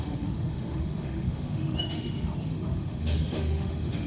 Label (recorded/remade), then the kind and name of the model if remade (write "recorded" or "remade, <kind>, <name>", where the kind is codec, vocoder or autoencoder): remade, autoencoder, DAC-VAE